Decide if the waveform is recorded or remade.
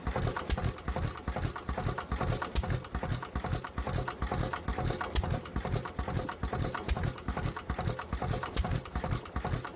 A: recorded